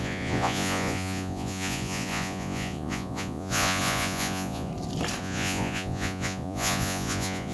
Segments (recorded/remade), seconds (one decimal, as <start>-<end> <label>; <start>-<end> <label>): 0.0-4.7 remade; 4.7-5.2 recorded; 5.2-7.5 remade